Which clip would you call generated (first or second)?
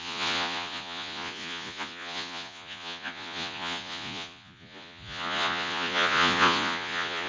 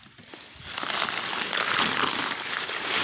first